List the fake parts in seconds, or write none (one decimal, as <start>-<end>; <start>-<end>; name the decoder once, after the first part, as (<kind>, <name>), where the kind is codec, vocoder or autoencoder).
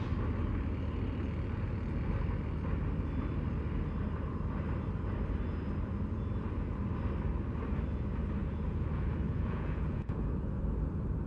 8.4-10.6 (vocoder, Vocos)